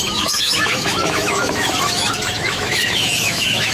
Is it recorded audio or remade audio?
remade